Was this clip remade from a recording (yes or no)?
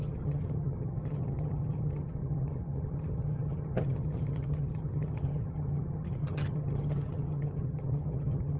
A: yes